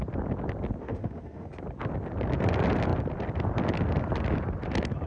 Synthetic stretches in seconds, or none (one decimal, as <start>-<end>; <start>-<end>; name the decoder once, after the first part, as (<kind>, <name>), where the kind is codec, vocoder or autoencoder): 0.8-1.5 (autoencoder, DAC-VAE)